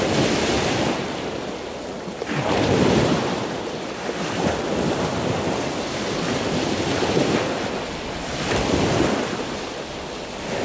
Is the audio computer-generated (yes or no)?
no